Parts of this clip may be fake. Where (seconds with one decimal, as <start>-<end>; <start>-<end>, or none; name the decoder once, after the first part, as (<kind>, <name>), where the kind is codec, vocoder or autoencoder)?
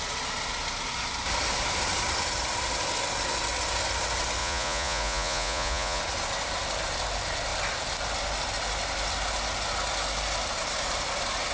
4.4-6.0 (vocoder, Vocos)